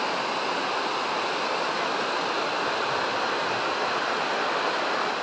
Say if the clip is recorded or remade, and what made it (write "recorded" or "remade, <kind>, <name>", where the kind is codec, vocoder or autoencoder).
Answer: recorded